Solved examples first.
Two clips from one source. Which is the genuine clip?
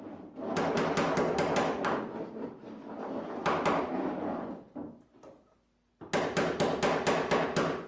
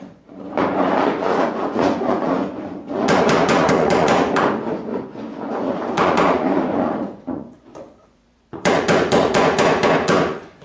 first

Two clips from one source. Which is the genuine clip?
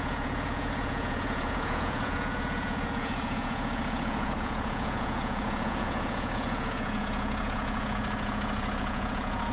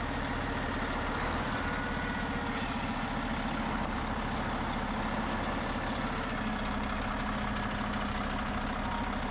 second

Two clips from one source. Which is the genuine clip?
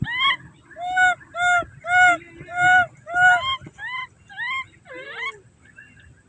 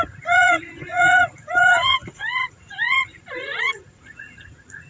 first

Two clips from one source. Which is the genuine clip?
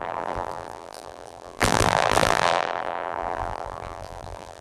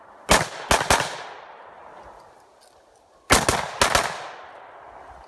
second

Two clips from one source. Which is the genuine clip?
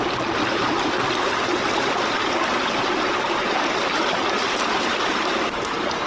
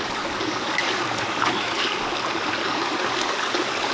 first